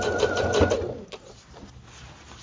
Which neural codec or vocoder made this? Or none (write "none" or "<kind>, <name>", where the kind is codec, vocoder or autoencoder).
none